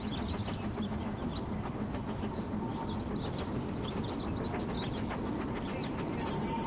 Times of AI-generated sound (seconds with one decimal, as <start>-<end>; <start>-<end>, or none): none